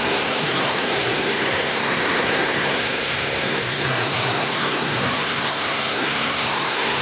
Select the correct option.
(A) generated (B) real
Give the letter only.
A